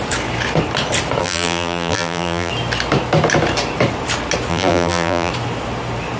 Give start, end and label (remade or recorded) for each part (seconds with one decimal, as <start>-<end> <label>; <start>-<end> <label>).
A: 0.0-1.2 recorded; 1.2-2.5 remade; 2.5-4.5 recorded; 4.5-5.3 remade; 5.3-6.2 recorded